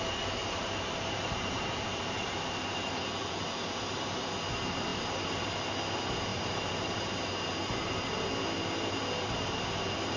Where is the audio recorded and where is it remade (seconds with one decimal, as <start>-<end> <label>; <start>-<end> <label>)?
0.0-0.4 recorded; 0.4-2.9 remade; 2.9-4.9 recorded; 4.9-5.7 remade; 5.7-6.3 recorded; 6.3-7.5 remade; 7.5-10.2 recorded